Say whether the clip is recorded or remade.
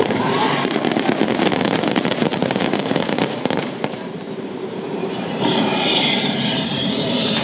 remade